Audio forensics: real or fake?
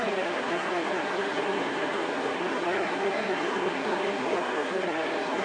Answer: fake